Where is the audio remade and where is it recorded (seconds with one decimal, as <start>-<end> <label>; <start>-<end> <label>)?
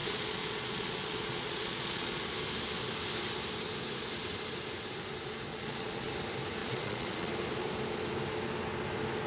0.0-2.2 remade; 2.2-5.5 recorded; 5.5-6.1 remade; 6.1-6.6 recorded; 6.6-7.3 remade; 7.3-9.3 recorded